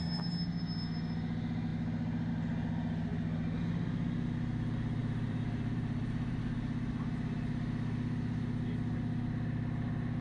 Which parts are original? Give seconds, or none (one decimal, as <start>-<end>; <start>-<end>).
0.0-5.0; 6.4-10.2